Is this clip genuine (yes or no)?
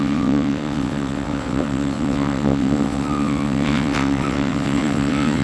no